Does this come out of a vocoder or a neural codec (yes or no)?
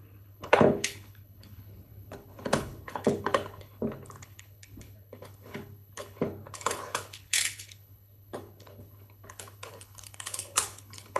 yes